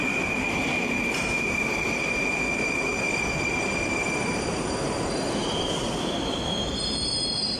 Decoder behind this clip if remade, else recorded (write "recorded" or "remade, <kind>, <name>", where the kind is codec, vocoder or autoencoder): remade, vocoder, BigVGAN v2